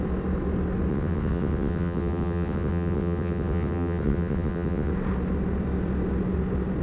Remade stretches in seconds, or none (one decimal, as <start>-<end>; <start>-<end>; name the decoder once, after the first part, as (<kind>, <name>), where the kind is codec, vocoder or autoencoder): 0.9-4.9 (vocoder, WaveNeXt)